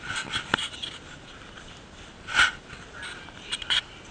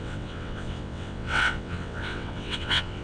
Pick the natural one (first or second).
first